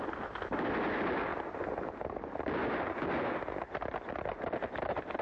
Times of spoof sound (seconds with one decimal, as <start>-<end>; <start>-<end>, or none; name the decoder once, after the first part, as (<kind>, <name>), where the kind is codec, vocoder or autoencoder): none